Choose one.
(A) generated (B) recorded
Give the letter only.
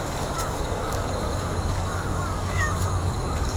A